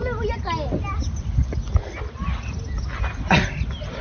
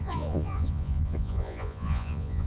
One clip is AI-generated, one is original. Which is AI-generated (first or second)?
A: second